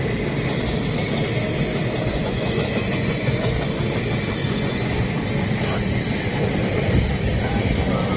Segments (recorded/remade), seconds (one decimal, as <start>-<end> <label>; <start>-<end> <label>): 0.0-2.1 recorded; 2.1-3.8 remade; 3.8-4.4 recorded; 4.4-5.1 remade; 5.1-8.2 recorded